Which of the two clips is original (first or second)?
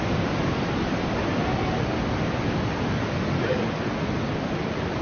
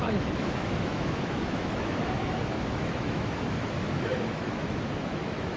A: first